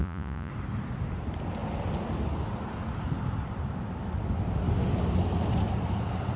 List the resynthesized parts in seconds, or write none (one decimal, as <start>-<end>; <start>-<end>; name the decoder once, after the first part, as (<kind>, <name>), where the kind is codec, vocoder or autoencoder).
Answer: 0.0-0.5 (vocoder, Vocos)